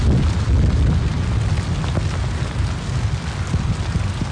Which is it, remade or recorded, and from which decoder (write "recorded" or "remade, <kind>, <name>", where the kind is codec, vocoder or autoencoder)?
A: recorded